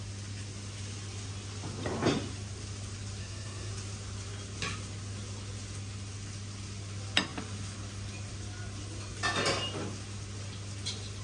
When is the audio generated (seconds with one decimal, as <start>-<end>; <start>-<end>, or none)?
3.2-3.7